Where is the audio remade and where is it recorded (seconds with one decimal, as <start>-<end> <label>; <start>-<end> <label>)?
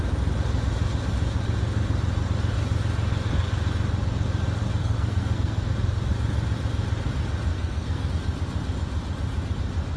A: 0.0-4.8 recorded; 4.8-5.7 remade; 5.7-7.5 recorded; 7.5-8.1 remade; 8.1-10.0 recorded